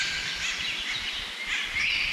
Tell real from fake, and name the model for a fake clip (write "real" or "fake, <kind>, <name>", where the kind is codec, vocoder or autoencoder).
real